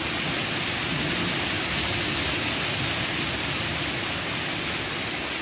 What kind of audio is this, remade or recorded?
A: recorded